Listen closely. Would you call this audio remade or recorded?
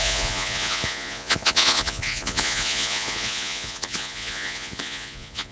remade